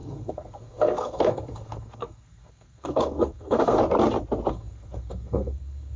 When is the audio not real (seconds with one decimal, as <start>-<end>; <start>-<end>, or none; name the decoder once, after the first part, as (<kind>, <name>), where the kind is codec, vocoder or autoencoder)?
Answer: 0.0-3.8 (codec, SNAC); 4.5-6.0